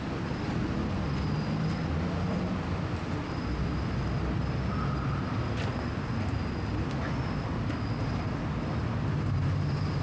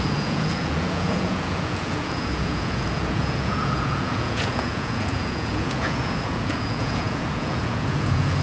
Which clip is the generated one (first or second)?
second